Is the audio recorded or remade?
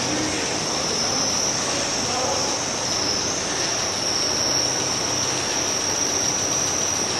recorded